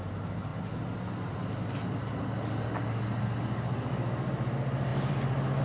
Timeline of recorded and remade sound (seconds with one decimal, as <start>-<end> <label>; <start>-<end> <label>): 0.0-4.9 recorded; 4.9-5.6 remade